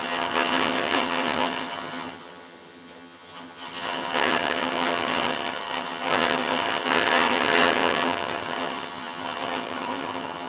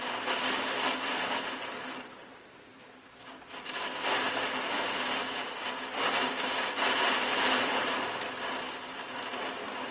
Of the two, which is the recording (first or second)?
second